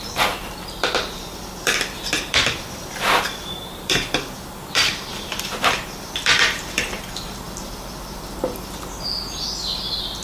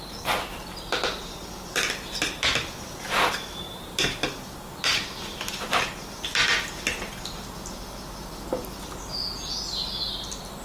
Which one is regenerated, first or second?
first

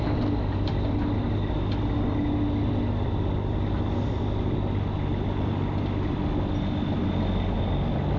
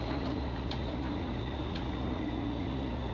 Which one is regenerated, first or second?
second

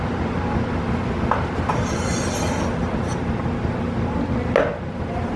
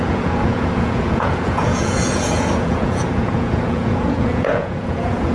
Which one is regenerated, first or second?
second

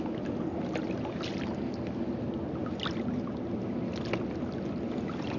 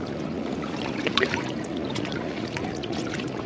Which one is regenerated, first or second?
second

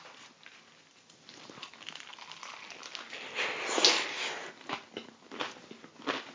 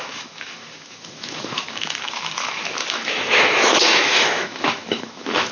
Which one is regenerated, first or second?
second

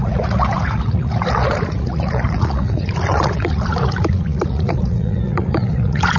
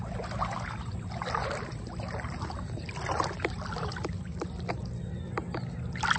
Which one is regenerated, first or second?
first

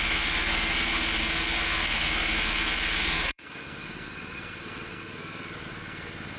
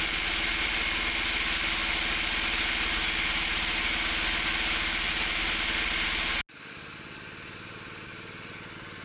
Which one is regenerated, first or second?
first